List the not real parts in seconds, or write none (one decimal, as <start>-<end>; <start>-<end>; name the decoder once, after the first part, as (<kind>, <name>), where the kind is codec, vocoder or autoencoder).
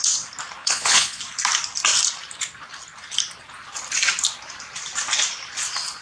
0.6-1.2 (vocoder, Vocos)